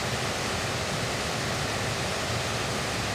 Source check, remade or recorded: recorded